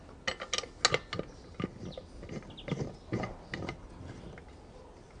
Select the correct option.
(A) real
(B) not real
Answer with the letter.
A